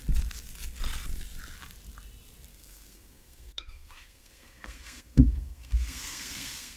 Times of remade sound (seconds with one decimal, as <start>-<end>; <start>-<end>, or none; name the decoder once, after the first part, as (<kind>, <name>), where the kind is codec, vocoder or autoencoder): 2.5-6.8 (codec, SNAC)